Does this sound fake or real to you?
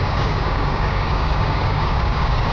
fake